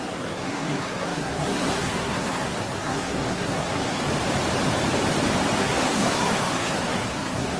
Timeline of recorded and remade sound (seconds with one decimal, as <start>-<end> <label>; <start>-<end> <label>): 0.0-4.0 remade; 4.0-5.6 recorded; 5.6-7.6 remade